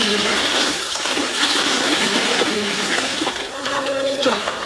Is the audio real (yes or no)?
no